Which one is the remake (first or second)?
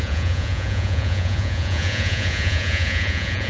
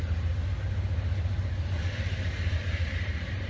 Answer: first